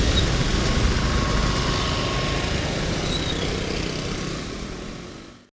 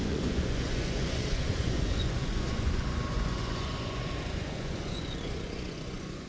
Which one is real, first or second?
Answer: first